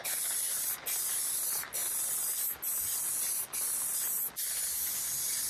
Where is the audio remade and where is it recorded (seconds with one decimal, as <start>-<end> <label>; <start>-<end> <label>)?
0.0-5.5 recorded